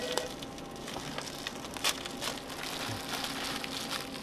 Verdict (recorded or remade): recorded